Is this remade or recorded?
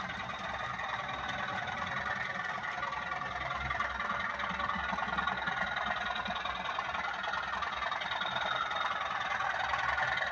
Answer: recorded